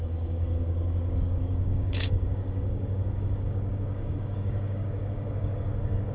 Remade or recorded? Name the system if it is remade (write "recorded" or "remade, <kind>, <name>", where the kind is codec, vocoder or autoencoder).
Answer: remade, codec, DAC